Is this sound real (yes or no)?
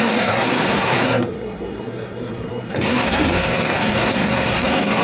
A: no